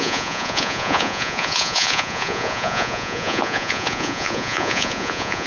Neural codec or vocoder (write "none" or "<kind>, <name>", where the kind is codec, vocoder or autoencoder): vocoder, Vocos